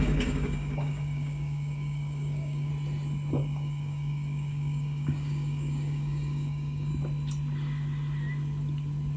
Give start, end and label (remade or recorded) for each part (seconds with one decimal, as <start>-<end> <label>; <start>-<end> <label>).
0.0-2.7 remade; 2.7-3.3 recorded; 3.3-6.9 remade; 6.9-9.2 recorded